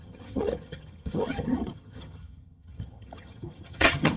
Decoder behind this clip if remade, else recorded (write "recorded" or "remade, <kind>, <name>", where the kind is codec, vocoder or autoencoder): remade, vocoder, HiFi-GAN